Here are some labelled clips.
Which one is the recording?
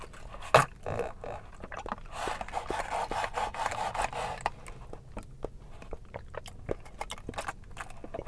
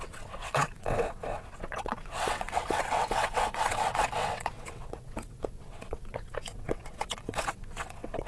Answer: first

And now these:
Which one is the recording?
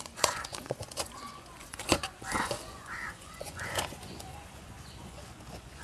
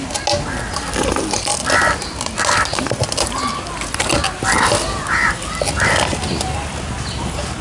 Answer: second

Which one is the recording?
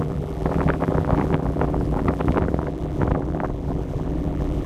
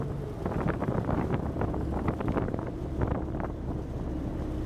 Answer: second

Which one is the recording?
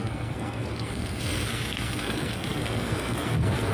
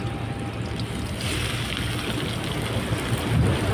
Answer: second